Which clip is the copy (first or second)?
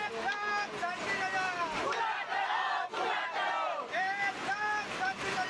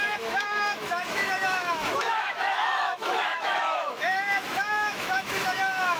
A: second